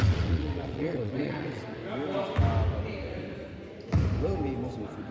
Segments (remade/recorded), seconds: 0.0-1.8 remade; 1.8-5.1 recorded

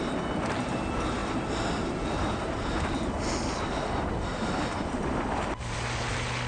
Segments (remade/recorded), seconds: 0.0-6.5 recorded